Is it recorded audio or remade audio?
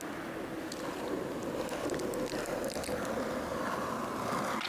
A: recorded